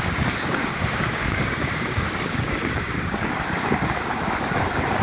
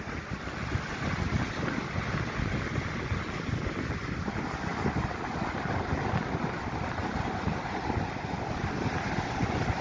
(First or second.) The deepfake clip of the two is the first